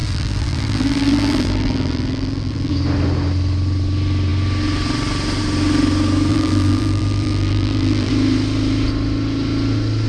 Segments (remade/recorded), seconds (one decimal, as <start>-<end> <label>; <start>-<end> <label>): 0.0-2.7 remade; 2.7-6.3 recorded; 6.3-8.1 remade; 8.1-10.1 recorded